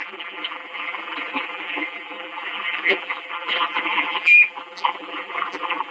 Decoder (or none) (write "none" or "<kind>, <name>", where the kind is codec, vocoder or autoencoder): vocoder, BigVGAN v2